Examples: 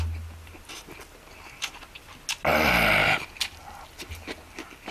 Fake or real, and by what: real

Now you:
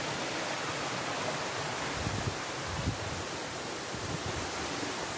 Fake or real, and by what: real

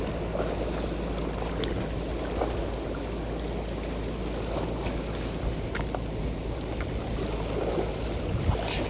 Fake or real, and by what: real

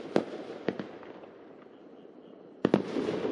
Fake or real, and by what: real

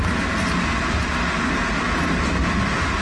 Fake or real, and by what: real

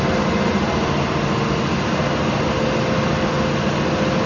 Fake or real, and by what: real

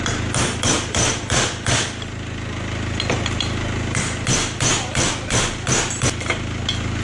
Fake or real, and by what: real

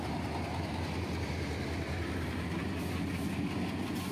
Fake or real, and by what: real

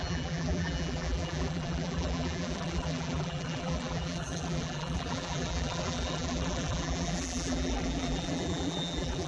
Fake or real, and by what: fake, vocoder, BigVGAN v2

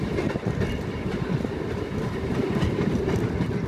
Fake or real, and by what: fake, vocoder, BigVGAN v2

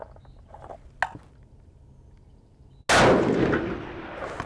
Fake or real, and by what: real